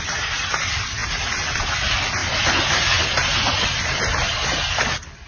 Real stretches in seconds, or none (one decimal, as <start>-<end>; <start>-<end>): 0.0-5.3